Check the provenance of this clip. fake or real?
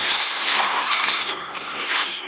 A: fake